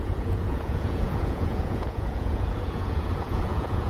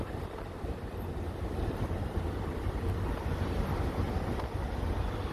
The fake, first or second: first